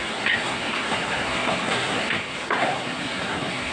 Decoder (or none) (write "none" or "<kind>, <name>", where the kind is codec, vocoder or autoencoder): codec, SNAC